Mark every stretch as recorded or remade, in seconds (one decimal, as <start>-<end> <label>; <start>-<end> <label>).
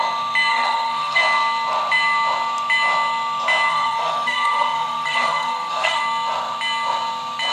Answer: 0.0-0.5 recorded; 0.5-1.2 remade; 1.2-3.7 recorded; 3.7-6.0 remade; 6.0-7.5 recorded